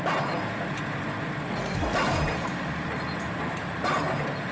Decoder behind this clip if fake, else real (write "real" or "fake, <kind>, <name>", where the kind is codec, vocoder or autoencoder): real